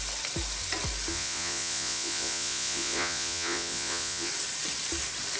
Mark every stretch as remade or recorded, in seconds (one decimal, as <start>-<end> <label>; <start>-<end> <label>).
0.0-1.1 recorded; 1.1-4.3 remade; 4.3-5.4 recorded